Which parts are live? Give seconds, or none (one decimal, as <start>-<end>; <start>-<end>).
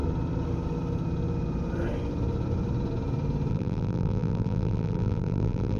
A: 0.0-3.5